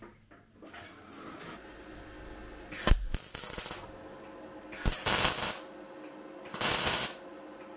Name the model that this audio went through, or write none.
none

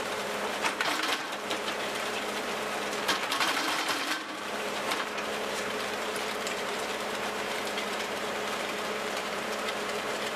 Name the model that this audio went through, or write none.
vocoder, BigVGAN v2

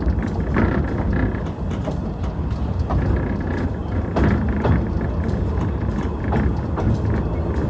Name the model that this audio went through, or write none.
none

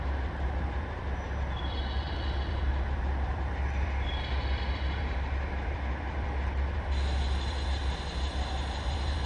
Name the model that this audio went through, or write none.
vocoder, BigVGAN v2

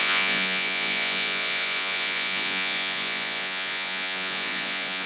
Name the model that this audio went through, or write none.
vocoder, Vocos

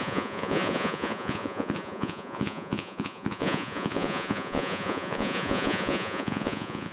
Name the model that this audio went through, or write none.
vocoder, Vocos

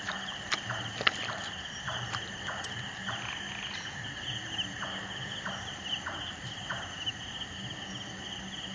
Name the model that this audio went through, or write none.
none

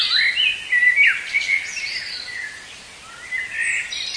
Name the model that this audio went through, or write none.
none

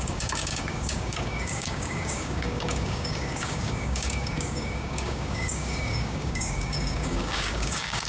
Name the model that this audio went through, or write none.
codec, DAC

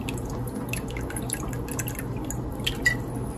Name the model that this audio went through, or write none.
none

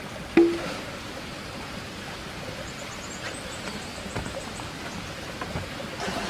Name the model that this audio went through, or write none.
none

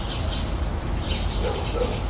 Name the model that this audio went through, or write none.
none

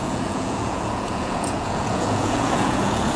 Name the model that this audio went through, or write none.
vocoder, Vocos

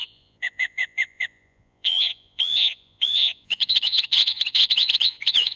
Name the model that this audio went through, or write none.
vocoder, Vocos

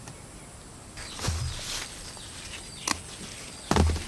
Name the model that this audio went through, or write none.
none